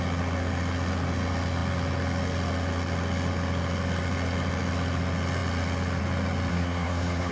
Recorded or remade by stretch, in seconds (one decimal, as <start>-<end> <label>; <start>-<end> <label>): 0.0-6.5 recorded; 6.5-7.3 remade